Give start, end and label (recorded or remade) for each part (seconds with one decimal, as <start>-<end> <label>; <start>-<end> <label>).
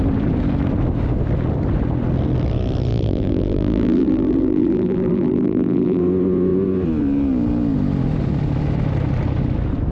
0.0-2.9 recorded; 2.9-6.0 remade; 6.0-9.9 recorded